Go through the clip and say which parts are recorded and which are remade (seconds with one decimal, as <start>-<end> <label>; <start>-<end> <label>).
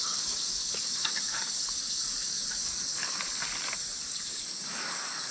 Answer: 0.0-3.2 remade; 3.2-4.0 recorded; 4.0-5.3 remade